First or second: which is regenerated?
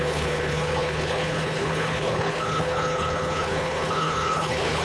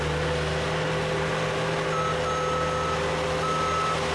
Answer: first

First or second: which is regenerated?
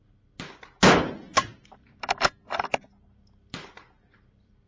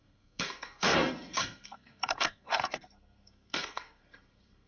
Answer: second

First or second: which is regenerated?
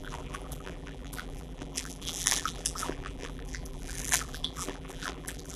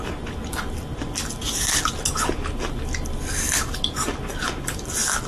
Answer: first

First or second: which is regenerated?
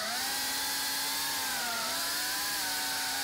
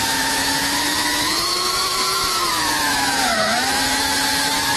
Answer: second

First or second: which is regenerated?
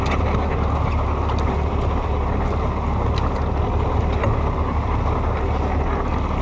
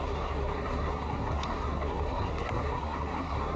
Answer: second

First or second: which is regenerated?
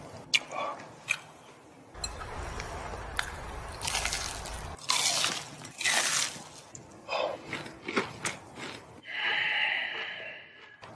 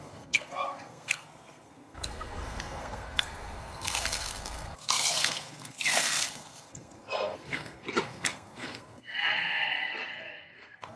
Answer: second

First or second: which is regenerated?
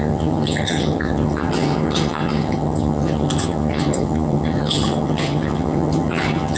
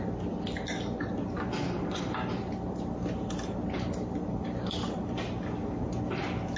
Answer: first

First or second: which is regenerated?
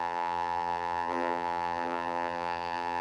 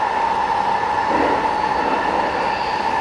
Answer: first